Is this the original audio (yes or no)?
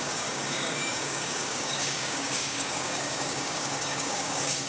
no